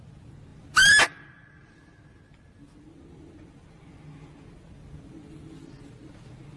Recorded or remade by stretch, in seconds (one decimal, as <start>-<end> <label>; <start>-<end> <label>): 0.0-6.6 recorded